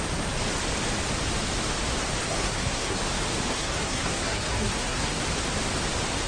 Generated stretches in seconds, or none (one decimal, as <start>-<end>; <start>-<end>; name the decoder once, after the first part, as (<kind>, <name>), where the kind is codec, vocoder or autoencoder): 2.2-3.0 (codec, SNAC); 3.5-5.2